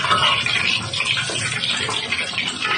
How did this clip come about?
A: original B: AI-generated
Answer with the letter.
A